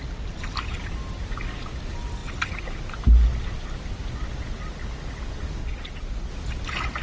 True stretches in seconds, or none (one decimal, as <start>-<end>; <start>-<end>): 0.0-5.6; 6.3-7.0